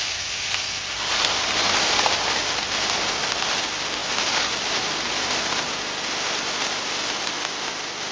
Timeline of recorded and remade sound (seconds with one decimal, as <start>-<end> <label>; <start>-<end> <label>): 0.0-8.1 recorded